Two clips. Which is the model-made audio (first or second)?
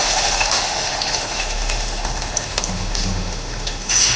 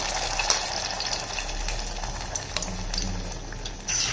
first